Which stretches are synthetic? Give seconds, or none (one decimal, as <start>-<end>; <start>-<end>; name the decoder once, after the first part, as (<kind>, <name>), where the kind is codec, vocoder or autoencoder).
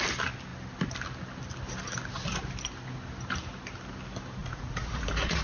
4.4-5.4 (vocoder, Vocos)